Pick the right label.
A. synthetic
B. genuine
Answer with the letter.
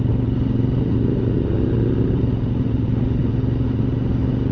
B